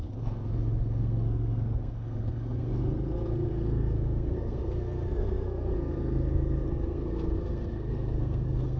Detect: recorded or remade remade